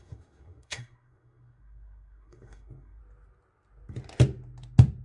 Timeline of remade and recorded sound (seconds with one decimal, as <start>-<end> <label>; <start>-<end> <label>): 0.0-3.0 remade; 3.0-5.0 recorded